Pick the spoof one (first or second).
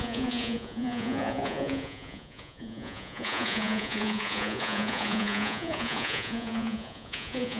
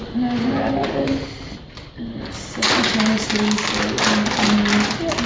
first